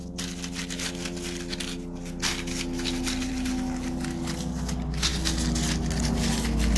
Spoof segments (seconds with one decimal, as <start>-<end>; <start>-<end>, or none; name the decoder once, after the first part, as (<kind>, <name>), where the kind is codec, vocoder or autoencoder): none